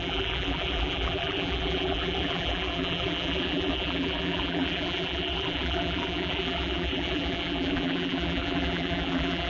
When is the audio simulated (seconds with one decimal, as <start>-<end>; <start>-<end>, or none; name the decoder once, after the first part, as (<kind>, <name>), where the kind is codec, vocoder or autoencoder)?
0.0-9.5 (vocoder, BigVGAN v2)